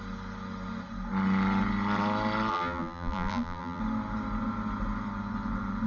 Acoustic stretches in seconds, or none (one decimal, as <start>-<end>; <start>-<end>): 0.0-2.5; 3.8-5.9